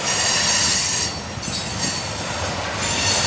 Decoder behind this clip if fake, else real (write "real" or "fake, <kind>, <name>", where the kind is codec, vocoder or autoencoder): real